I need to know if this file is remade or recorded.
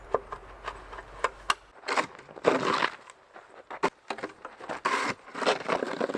recorded